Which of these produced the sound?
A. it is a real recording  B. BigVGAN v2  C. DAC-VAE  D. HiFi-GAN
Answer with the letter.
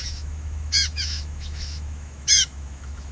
C